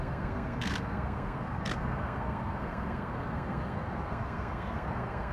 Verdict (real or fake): fake